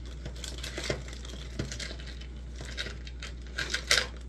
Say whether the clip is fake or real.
real